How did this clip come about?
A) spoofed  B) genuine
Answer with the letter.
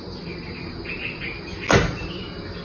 B